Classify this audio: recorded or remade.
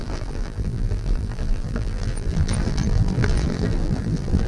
remade